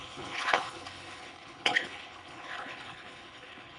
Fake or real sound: fake